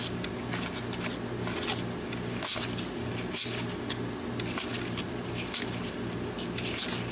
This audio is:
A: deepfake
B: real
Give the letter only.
B